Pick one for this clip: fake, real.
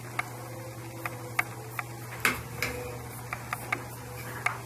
real